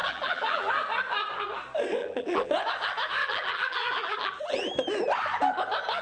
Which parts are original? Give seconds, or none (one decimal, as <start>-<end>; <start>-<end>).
0.7-2.0; 2.5-3.2; 4.7-6.0